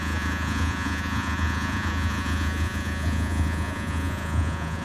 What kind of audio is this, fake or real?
fake